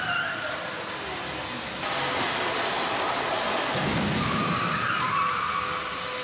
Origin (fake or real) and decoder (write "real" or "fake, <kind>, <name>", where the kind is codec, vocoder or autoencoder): real